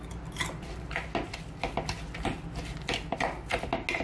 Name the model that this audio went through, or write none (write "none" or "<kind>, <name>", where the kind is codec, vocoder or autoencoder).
none